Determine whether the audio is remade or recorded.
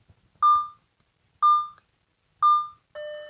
recorded